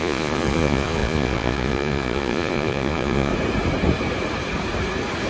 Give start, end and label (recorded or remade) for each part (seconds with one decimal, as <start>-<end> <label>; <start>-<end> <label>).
0.0-3.3 remade; 3.3-5.3 recorded